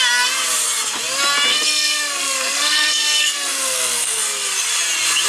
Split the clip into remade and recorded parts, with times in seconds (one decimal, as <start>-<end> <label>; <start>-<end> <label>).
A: 0.0-1.5 recorded; 1.5-4.2 remade; 4.2-5.3 recorded